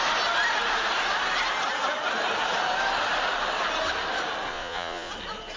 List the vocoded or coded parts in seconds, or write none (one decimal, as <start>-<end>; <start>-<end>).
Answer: 4.5-5.1